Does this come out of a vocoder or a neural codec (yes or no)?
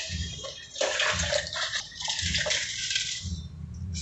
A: yes